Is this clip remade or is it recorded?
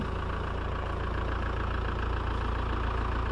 recorded